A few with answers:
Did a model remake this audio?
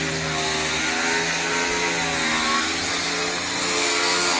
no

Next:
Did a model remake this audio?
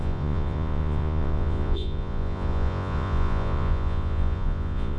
yes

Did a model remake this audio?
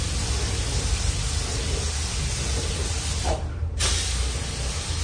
no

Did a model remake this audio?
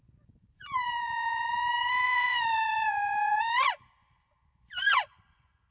yes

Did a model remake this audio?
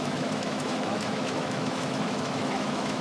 yes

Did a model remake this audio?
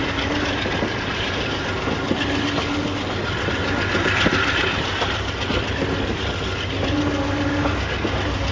no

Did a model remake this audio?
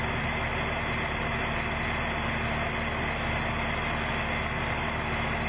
no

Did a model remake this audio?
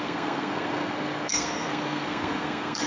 yes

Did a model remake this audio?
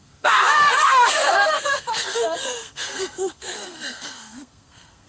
yes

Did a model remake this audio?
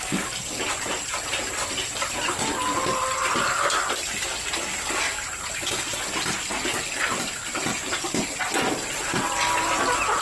no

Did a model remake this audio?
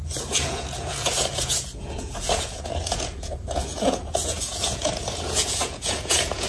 yes